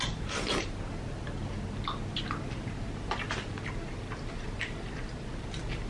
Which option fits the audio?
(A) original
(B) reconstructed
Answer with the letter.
A